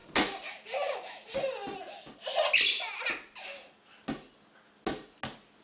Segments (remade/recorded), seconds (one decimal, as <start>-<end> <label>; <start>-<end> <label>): 0.0-5.6 recorded